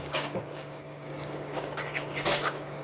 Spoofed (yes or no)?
yes